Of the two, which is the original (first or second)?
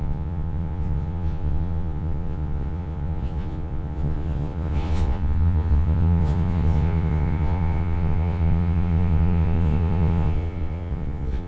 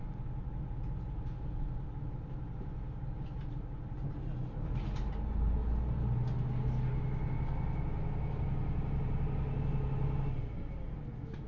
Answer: second